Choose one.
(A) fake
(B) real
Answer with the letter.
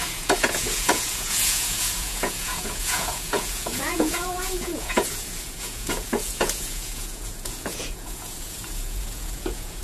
A